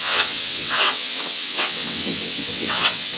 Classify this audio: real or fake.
fake